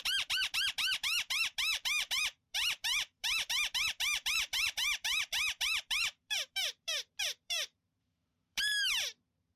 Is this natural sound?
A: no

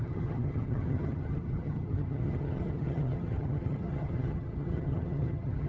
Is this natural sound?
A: no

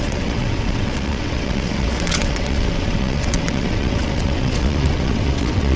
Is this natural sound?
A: no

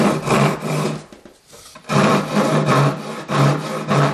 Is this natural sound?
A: yes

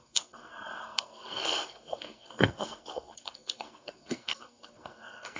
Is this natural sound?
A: no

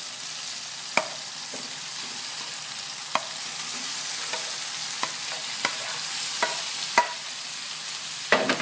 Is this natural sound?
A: yes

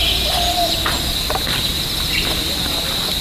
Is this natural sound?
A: yes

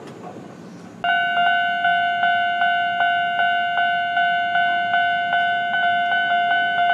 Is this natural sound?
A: yes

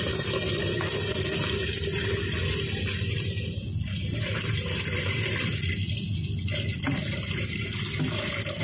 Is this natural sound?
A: yes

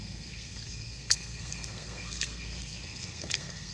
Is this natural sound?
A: no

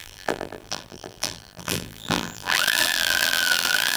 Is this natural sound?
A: no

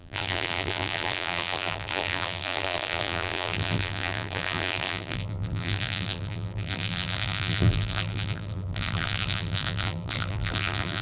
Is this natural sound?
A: no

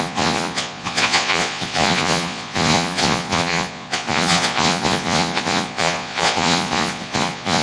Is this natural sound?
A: no